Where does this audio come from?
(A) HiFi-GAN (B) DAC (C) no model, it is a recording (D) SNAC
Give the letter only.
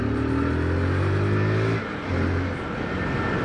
C